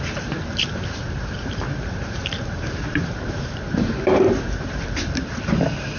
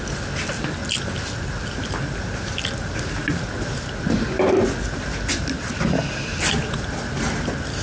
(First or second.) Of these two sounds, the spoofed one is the first